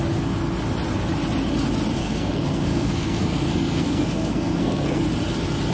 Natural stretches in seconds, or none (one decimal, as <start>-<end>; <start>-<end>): 0.0-2.0; 5.0-5.7